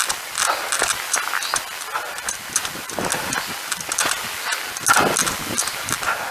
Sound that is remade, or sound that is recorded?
recorded